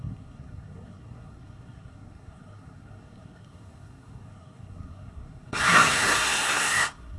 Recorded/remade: remade